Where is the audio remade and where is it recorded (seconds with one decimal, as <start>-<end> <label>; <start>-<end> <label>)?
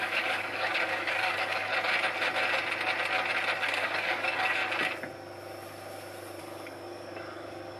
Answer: 0.0-1.7 remade; 1.7-3.7 recorded; 3.7-4.6 remade; 4.6-6.4 recorded; 6.4-7.8 remade